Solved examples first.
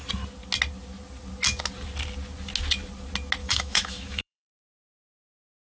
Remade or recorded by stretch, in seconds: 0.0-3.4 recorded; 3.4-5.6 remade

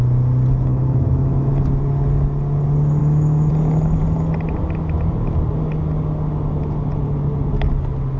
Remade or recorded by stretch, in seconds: 0.0-0.7 recorded; 0.7-1.5 remade; 1.5-3.0 recorded; 3.0-3.5 remade; 3.5-8.2 recorded

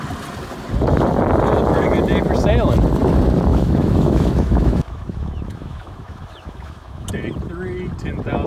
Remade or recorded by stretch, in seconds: 0.0-3.5 recorded; 3.5-7.1 remade; 7.1-8.5 recorded

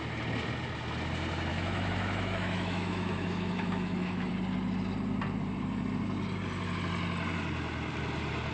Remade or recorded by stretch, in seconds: 0.0-1.5 recorded; 1.5-4.3 remade; 4.3-8.5 recorded

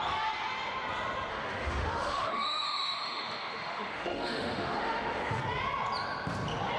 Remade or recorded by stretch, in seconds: 0.0-1.3 recorded; 1.3-5.4 remade; 5.4-6.8 recorded

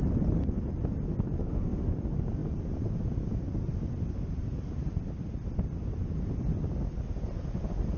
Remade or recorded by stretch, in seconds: 0.0-1.4 recorded; 1.4-1.9 remade; 1.9-8.0 recorded

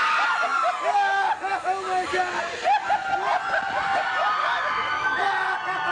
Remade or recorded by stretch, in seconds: 0.0-4.4 recorded; 4.4-5.2 remade; 5.2-5.9 recorded